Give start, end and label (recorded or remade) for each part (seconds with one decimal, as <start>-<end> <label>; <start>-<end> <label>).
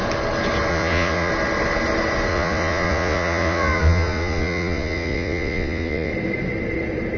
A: 0.0-0.7 recorded; 0.7-1.3 remade; 1.3-2.3 recorded; 2.3-6.1 remade; 6.1-7.2 recorded